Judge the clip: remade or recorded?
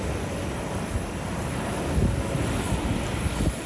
recorded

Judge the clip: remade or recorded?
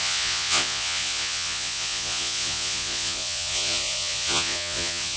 remade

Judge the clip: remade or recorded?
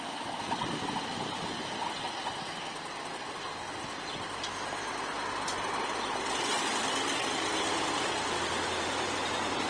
recorded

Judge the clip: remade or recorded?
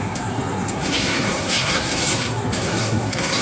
remade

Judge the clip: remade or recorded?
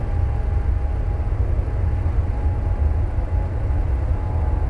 recorded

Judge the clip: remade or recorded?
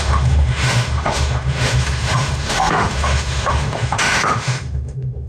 remade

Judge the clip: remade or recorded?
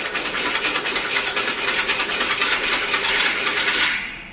remade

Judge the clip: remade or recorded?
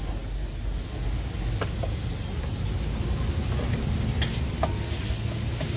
recorded